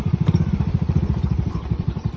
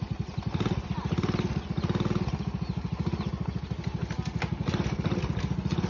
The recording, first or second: second